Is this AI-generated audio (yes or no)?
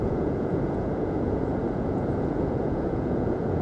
yes